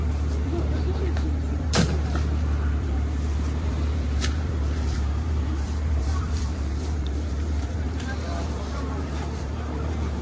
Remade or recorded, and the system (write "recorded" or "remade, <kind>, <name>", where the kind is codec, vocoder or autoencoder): remade, vocoder, BigVGAN v2